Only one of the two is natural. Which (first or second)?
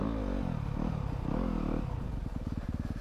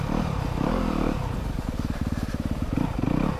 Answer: first